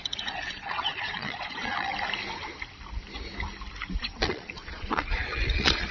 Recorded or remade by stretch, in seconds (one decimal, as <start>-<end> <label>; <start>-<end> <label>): 0.0-1.9 remade; 1.9-4.0 recorded; 4.0-5.9 remade